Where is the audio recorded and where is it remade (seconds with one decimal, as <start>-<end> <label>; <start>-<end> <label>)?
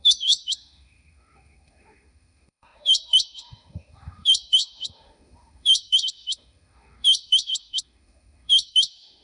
0.0-9.2 remade